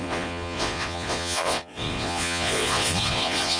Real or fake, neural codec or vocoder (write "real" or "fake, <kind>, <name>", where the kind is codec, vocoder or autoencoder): fake, vocoder, Vocos